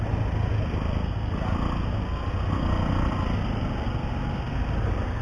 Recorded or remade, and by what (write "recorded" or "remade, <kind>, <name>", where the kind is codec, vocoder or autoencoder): recorded